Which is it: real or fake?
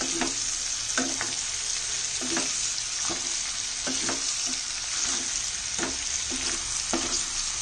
real